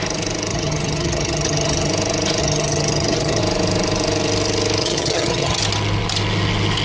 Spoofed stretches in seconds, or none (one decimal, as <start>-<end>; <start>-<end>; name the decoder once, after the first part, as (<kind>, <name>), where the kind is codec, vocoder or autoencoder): 0.5-1.9 (vocoder, HiFi-GAN); 2.4-3.4; 4.8-5.6

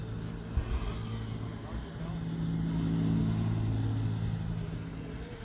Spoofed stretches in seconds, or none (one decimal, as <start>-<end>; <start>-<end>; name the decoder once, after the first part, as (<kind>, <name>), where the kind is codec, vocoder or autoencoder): none

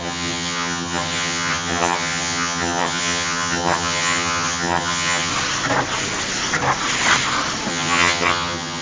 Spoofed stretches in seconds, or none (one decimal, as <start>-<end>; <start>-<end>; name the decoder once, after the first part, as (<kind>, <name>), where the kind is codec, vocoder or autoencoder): 0.0-5.3 (vocoder, HiFi-GAN); 7.7-8.8

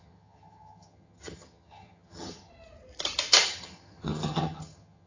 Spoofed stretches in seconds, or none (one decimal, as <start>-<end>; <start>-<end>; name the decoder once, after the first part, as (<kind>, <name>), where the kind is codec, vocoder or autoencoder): 0.0-2.5 (vocoder, HiFi-GAN); 3.4-5.1

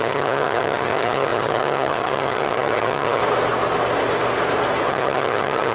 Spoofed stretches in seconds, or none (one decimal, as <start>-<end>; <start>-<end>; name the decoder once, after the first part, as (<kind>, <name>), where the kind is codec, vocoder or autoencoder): 0.0-3.2 (vocoder, HiFi-GAN); 4.9-5.7